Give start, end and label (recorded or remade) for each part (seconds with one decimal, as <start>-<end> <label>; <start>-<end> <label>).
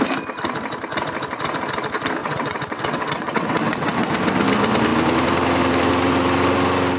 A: 0.0-2.2 recorded; 2.2-4.1 remade; 4.1-7.0 recorded